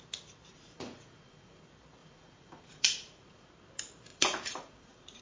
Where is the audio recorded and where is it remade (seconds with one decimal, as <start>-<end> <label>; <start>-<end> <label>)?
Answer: 0.0-0.5 recorded; 0.5-1.6 remade; 1.6-2.0 recorded; 2.0-3.5 remade; 3.5-4.1 recorded; 4.1-5.2 remade